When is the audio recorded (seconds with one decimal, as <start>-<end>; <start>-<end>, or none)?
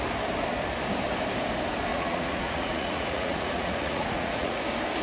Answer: 0.0-1.9; 4.6-5.0